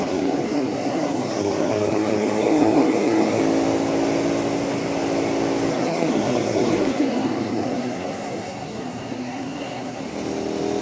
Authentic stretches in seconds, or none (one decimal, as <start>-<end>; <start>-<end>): 3.4-5.7; 10.0-10.8